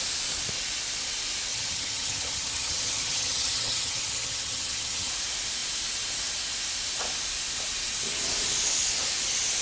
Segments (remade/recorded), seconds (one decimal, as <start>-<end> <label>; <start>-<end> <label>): 0.0-1.5 recorded; 1.5-5.1 remade; 5.1-9.6 recorded